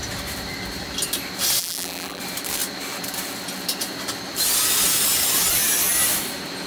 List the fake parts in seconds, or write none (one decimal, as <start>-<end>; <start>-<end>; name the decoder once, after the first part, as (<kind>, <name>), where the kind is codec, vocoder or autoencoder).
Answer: 1.6-2.2 (vocoder, BigVGAN v2)